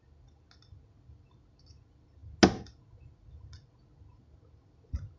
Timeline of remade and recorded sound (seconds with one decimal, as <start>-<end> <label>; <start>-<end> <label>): 0.0-5.2 recorded

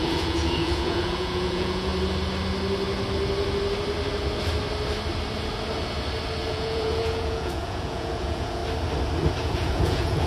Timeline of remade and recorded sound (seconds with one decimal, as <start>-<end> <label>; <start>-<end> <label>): 0.0-1.9 remade; 1.9-6.5 recorded; 6.5-8.6 remade; 8.6-9.3 recorded; 9.3-10.3 remade